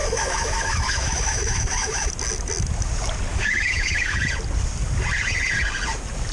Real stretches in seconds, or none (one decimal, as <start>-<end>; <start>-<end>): 2.1-3.3; 4.2-6.3